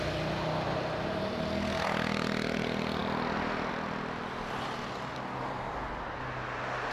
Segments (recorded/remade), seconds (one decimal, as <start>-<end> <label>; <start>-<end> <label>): 0.0-6.9 recorded